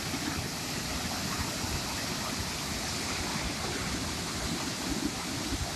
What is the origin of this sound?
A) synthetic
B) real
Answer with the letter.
B